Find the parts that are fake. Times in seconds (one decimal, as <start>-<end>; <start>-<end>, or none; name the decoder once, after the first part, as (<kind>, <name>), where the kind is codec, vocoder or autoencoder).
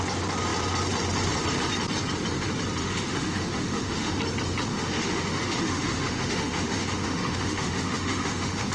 2.8-4.2 (autoencoder, DAC-VAE); 4.7-8.7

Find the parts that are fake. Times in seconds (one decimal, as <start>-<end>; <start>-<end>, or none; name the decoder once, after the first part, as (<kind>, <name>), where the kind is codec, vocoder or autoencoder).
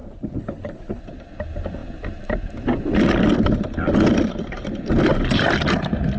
0.0-1.0 (codec, HILCodec)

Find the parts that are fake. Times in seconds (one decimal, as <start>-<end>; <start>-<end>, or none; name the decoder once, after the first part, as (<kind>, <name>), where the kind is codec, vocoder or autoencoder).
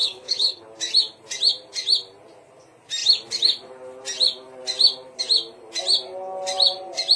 0.0-0.6 (codec, HILCodec)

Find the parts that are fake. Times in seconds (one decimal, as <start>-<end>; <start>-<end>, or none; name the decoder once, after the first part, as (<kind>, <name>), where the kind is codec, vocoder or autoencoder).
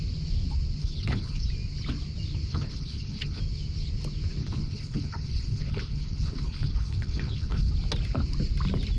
0.8-1.5 (codec, HILCodec); 2.5-3.4; 4.4-7.7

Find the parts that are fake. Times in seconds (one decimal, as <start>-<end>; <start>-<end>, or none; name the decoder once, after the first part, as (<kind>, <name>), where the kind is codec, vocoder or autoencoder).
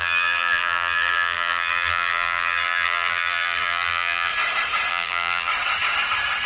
0.0-4.3 (vocoder, BigVGAN v2); 4.9-5.5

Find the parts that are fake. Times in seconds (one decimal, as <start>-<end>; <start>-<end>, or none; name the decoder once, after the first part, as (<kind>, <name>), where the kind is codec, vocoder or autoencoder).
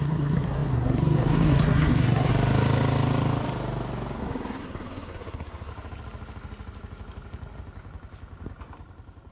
0.0-2.3 (codec, SNAC); 4.2-5.7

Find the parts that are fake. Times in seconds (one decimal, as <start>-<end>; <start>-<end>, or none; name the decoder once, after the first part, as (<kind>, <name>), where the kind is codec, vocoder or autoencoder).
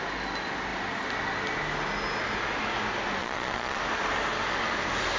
3.2-3.8 (vocoder, Vocos)